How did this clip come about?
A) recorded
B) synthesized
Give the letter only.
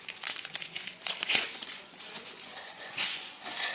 B